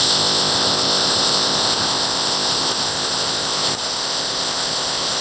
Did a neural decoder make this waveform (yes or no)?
yes